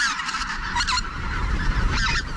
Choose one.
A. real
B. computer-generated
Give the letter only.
B